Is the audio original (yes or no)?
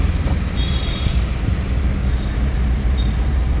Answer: no